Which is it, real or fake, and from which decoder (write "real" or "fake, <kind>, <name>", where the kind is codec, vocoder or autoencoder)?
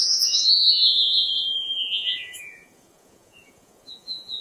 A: fake, vocoder, Vocos